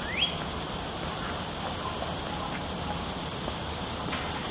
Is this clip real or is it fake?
real